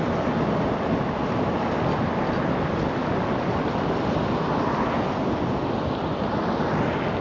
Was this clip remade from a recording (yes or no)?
no